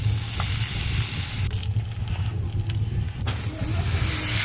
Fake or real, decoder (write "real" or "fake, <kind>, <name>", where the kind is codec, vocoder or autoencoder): real